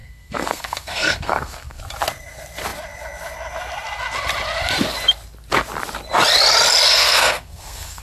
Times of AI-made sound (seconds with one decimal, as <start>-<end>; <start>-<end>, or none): 0.0-1.8; 6.9-8.0